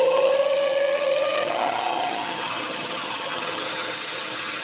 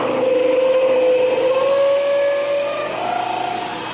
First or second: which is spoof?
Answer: first